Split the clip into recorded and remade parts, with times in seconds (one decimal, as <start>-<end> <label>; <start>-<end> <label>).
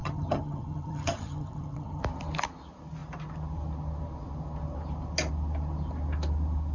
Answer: 0.0-2.0 remade; 2.0-6.7 recorded